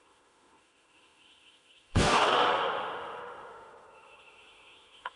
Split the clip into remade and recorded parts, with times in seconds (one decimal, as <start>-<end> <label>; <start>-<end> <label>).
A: 0.0-5.2 remade